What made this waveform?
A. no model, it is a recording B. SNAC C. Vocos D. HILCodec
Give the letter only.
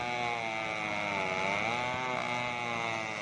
A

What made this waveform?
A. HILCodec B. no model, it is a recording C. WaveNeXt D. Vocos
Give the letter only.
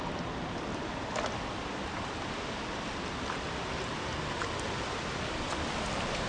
B